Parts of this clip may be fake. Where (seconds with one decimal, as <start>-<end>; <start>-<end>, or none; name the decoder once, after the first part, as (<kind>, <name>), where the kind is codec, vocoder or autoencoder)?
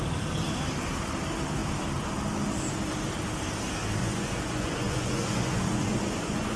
4.0-6.6 (vocoder, Vocos)